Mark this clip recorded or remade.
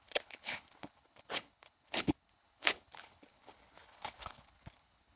remade